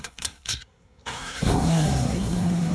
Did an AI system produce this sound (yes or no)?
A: yes